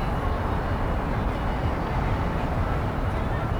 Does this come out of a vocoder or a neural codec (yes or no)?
no